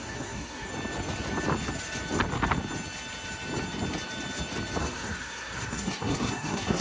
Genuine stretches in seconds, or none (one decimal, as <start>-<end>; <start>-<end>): 0.7-4.8

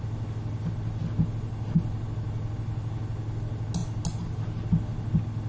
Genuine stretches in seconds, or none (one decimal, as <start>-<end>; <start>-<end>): 0.0-5.5

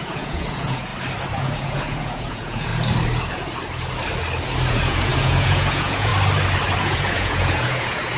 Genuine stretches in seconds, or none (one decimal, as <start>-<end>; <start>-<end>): 0.9-1.4; 2.7-4.7; 6.1-6.8

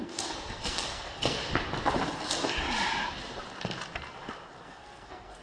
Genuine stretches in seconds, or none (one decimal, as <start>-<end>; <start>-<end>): 1.4-4.6

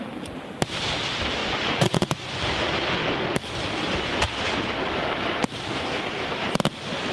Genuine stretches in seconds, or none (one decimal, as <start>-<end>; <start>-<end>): 0.0-1.4; 2.4-7.1

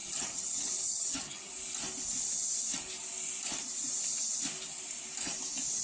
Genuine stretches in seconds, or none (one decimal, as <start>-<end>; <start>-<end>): 1.5-5.8

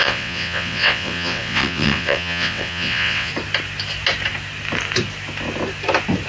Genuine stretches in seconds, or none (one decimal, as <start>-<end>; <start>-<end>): 3.3-6.3

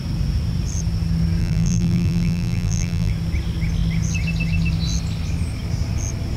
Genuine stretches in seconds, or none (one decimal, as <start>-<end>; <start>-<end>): 0.0-1.4; 3.1-6.4